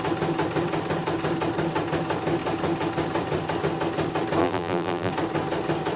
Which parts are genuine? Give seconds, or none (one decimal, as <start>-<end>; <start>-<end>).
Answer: 0.0-4.4; 5.1-6.0